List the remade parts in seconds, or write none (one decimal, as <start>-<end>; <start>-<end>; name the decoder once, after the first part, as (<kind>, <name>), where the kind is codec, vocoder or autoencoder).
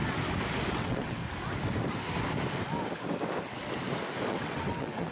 0.7-1.2 (vocoder, WaveNeXt); 4.3-5.1